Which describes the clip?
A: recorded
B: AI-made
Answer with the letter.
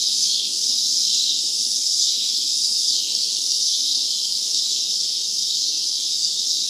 B